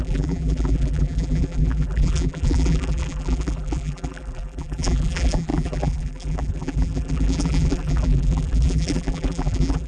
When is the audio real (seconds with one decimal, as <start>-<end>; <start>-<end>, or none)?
none